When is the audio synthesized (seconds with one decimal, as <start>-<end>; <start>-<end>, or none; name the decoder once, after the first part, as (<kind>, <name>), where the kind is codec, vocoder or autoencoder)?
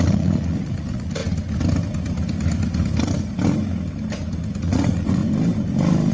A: 0.0-1.2 (vocoder, Vocos); 4.6-5.2